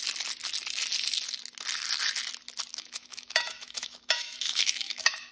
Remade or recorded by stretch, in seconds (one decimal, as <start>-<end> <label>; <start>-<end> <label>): 0.0-2.7 recorded; 2.7-5.3 remade